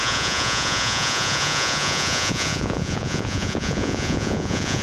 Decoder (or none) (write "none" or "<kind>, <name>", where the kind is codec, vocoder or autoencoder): vocoder, Vocos